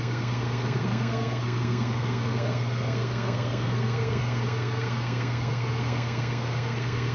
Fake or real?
fake